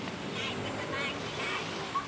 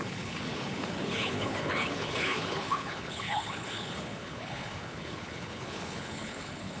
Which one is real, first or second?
first